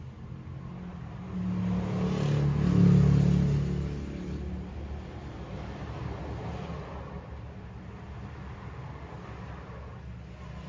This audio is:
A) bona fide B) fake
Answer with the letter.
A